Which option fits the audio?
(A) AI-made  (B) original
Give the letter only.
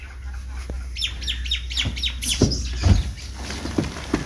B